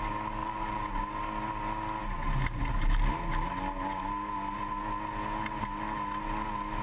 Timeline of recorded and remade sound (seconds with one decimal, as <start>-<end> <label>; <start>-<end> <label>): 0.0-0.4 recorded; 0.4-1.0 remade; 1.0-6.8 recorded